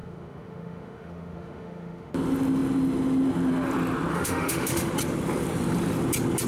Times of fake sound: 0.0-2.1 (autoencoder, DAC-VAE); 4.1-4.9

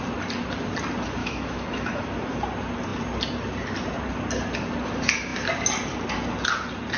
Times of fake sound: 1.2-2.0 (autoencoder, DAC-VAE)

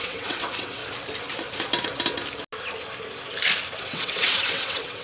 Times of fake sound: 0.0-0.8 (vocoder, WaveNeXt); 3.8-5.0

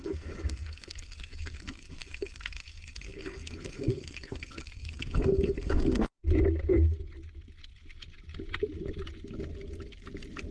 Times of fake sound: 0.0-6.2 (codec, SNAC)

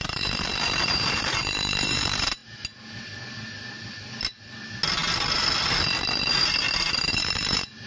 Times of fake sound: 0.0-2.4 (vocoder, BigVGAN v2); 7.1-7.9

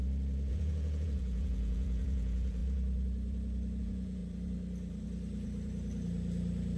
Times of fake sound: 0.5-2.6 (vocoder, Vocos); 3.8-4.2

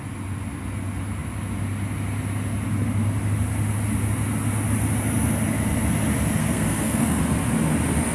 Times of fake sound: 6.4-7.2 (codec, SNAC)

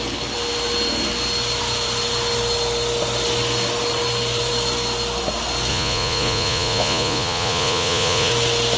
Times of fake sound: 5.7-8.3 (vocoder, Vocos)